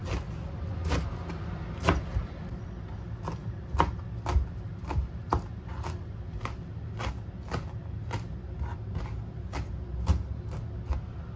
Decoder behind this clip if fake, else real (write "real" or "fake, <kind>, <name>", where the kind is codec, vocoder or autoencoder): real